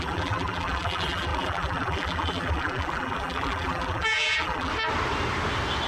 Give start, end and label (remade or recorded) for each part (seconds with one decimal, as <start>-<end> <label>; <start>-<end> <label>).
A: 0.0-4.7 remade; 4.7-5.9 recorded